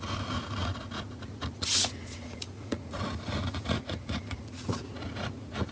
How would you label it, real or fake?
fake